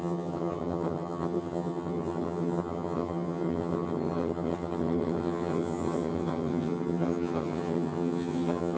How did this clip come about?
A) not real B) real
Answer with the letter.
A